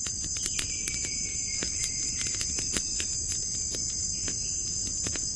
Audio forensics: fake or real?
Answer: real